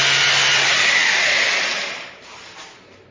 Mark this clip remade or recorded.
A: recorded